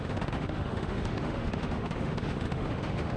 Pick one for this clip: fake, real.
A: fake